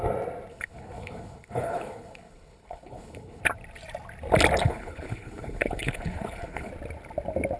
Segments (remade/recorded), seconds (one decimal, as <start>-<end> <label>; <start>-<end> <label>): 0.0-0.5 recorded; 0.5-3.4 remade; 3.4-4.6 recorded; 4.6-6.7 remade; 6.7-7.6 recorded